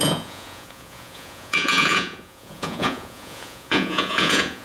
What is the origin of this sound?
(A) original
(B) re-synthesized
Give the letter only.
B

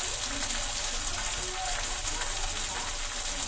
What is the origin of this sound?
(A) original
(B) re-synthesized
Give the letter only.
A